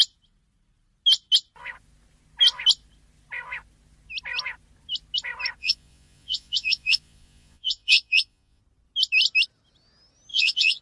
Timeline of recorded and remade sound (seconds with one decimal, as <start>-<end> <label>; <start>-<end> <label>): 0.0-5.6 recorded; 5.6-8.6 remade; 8.6-10.3 recorded; 10.3-10.8 remade